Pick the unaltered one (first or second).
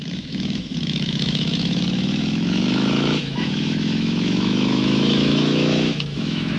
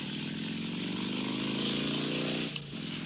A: second